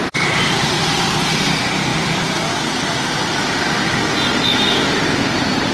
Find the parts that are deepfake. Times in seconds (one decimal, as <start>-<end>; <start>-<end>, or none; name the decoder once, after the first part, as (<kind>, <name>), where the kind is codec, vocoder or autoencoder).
none